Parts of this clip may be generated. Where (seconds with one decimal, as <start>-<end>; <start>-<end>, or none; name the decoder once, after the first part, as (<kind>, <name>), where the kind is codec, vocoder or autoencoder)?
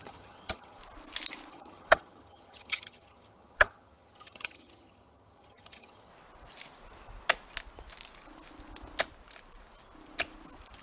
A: 0.0-0.8 (vocoder, HiFi-GAN); 1.5-6.1